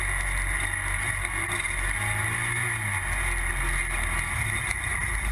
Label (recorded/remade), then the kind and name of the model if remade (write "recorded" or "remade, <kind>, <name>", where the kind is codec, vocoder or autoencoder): recorded